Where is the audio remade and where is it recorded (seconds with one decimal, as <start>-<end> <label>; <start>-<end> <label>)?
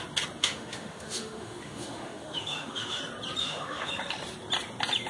0.0-0.4 recorded; 0.4-3.0 remade; 3.0-3.4 recorded; 3.4-3.9 remade; 3.9-5.1 recorded